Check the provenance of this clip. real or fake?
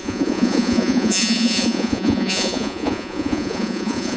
fake